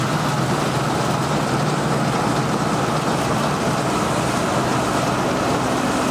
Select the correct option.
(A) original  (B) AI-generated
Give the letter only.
A